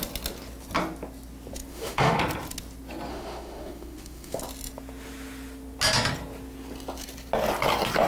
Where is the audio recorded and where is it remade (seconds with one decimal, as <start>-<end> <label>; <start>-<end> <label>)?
0.0-1.7 recorded; 1.7-2.2 remade; 2.2-3.1 recorded; 3.1-4.4 remade; 4.4-8.1 recorded